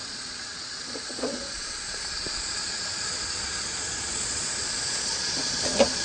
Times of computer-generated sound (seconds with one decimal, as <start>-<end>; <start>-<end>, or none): 0.0-6.0

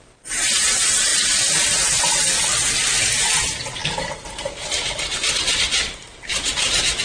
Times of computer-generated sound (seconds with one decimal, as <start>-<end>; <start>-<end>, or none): 0.0-1.1; 3.2-7.0

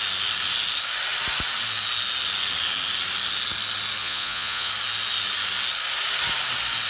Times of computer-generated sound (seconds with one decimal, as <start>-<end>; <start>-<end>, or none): 4.0-4.7

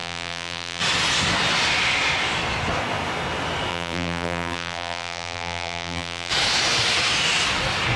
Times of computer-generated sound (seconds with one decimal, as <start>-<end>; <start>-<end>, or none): 0.0-0.8; 3.7-6.3

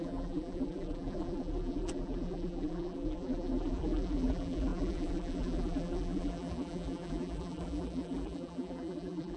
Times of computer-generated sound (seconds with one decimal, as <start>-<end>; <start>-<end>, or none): 0.0-9.4